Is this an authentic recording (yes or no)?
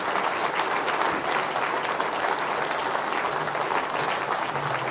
yes